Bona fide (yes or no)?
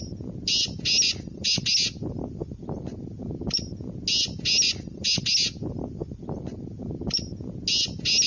yes